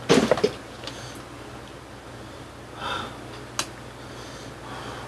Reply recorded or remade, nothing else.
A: recorded